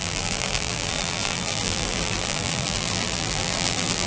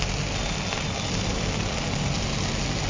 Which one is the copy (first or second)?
first